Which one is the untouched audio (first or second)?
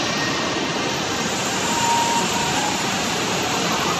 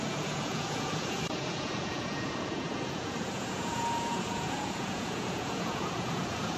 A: first